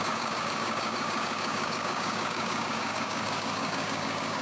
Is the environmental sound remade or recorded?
remade